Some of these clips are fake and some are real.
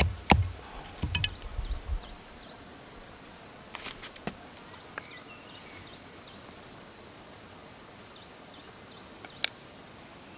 real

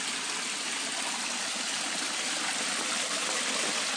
real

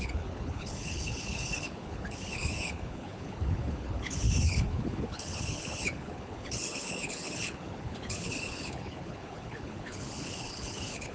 fake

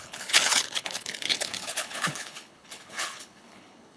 fake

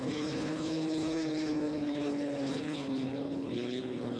fake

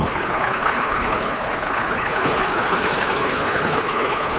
fake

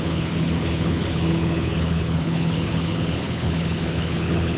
fake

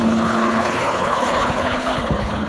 fake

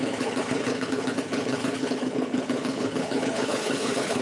fake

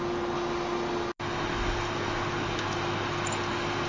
real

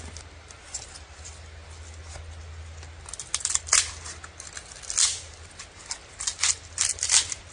real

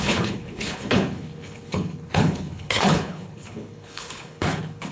fake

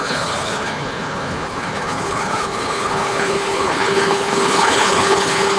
fake